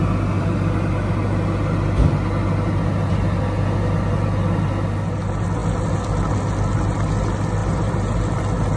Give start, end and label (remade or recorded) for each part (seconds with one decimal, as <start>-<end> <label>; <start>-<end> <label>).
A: 0.0-7.6 recorded; 7.6-8.2 remade; 8.2-8.8 recorded